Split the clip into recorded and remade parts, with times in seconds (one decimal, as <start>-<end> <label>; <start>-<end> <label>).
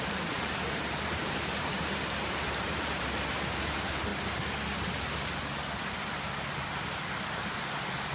0.0-4.1 remade; 4.1-7.6 recorded; 7.6-8.1 remade